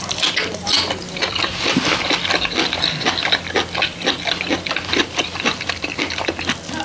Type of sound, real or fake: real